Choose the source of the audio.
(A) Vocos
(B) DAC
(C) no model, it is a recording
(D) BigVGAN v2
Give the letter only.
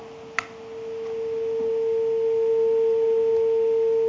C